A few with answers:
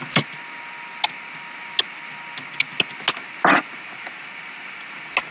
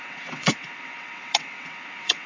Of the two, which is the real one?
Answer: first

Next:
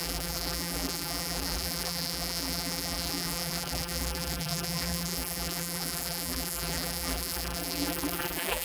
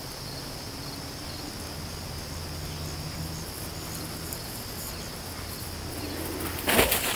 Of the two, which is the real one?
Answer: second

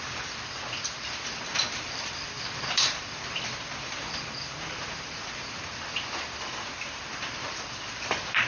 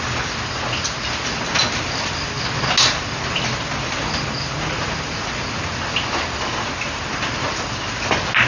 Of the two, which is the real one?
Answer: second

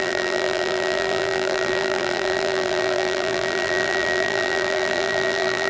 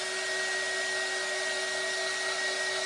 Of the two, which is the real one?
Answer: second